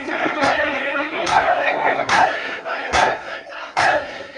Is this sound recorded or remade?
remade